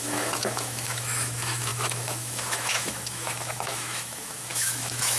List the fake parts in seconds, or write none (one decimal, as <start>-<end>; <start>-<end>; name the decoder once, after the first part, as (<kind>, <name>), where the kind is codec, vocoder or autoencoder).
0.0-5.2 (autoencoder, DAC-VAE)